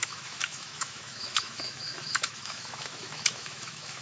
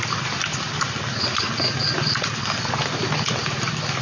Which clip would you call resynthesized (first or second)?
first